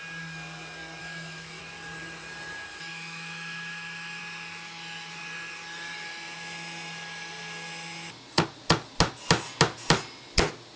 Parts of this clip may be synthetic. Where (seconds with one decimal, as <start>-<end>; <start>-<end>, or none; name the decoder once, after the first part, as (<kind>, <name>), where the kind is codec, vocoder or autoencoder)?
1.0-1.6 (autoencoder, DAC-VAE); 2.7-4.2